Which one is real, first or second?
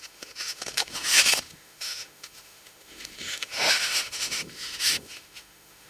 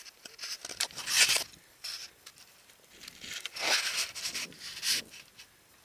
second